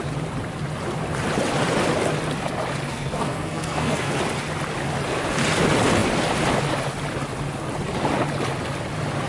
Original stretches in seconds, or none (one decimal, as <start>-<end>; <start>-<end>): 0.0-2.9; 4.2-9.3